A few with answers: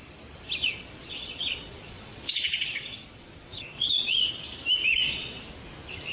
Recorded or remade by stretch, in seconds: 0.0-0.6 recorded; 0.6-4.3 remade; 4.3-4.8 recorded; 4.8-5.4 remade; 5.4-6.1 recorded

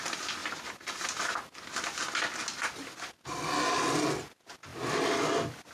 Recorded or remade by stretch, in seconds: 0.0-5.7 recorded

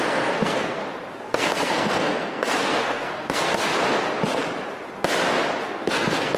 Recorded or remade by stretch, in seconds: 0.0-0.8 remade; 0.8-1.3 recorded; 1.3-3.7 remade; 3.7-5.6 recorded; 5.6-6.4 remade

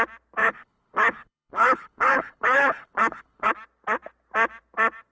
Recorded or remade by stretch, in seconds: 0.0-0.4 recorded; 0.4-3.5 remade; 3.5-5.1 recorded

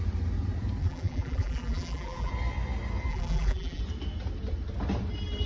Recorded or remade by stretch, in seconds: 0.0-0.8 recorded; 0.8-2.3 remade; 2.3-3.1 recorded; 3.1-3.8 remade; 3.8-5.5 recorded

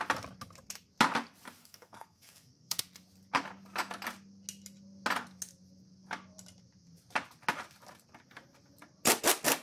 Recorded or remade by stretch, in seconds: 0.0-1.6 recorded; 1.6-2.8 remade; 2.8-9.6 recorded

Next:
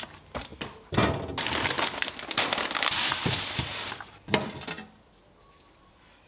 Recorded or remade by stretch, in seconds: 0.0-6.3 recorded